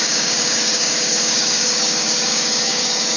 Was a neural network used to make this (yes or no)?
yes